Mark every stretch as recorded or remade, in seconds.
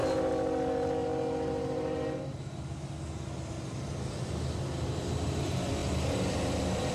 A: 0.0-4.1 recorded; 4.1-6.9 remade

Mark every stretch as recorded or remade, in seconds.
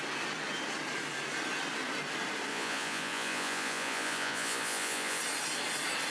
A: 0.0-2.5 recorded; 2.5-5.2 remade; 5.2-6.1 recorded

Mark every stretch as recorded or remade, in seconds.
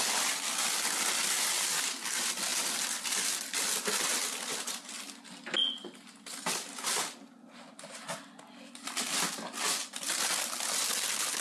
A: 0.0-11.4 recorded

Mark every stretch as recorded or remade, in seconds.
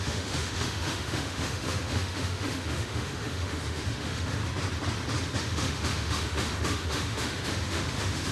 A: 0.0-4.4 remade; 4.4-5.4 recorded; 5.4-8.3 remade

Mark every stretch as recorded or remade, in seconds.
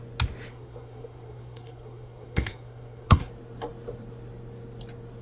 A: 0.0-0.5 recorded; 0.5-3.3 remade; 3.3-5.2 recorded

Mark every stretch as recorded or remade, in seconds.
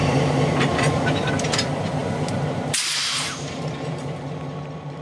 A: 0.0-1.3 remade; 1.3-2.0 recorded; 2.0-4.2 remade; 4.2-5.0 recorded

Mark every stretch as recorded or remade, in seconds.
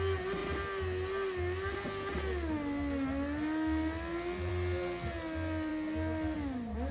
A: 0.0-6.9 recorded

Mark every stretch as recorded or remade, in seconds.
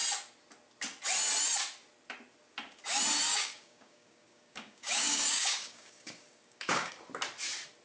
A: 0.0-3.3 recorded; 3.3-6.9 remade; 6.9-7.8 recorded